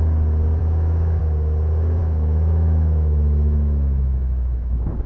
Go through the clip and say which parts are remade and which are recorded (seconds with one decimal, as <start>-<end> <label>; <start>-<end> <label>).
0.0-0.6 recorded; 0.6-1.2 remade; 1.2-2.0 recorded; 2.0-5.1 remade